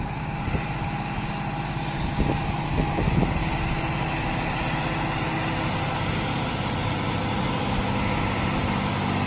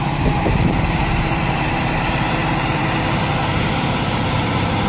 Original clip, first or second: first